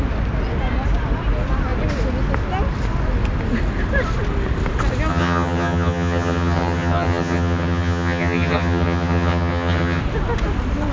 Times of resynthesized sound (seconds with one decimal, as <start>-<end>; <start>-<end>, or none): 5.1-10.0